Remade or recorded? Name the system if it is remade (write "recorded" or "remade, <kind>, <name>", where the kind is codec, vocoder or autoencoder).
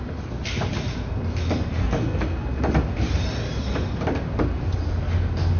recorded